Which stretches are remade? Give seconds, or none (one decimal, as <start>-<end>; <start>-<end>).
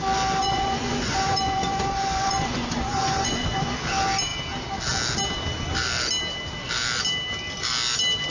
0.4-3.7